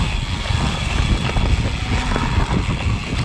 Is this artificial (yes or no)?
no